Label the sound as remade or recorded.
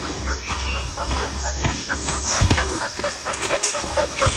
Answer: remade